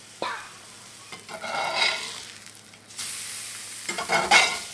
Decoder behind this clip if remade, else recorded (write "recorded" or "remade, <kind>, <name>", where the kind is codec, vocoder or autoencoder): recorded